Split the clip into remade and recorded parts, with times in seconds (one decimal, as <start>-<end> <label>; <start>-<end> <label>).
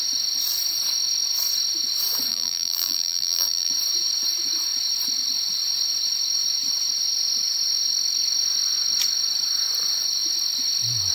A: 0.0-2.3 recorded; 2.3-3.7 remade; 3.7-11.1 recorded